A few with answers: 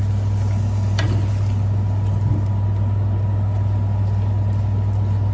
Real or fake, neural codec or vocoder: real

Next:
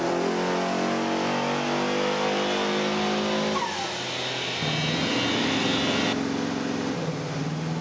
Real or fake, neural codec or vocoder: real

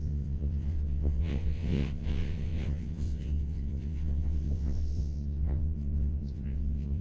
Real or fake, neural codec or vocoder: fake, vocoder, WaveNeXt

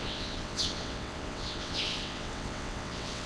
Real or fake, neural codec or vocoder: fake, vocoder, WaveNeXt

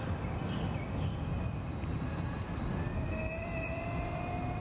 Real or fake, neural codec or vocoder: real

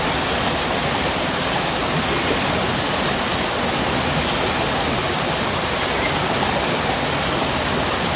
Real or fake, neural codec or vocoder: real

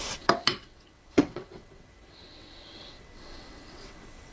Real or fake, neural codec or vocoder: fake, vocoder, WaveNeXt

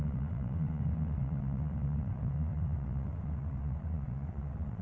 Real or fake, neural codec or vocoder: fake, vocoder, WaveNeXt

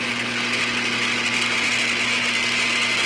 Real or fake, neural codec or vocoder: real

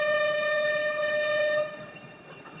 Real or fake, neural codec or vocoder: fake, vocoder, WaveNeXt